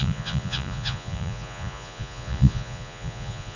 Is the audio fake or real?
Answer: fake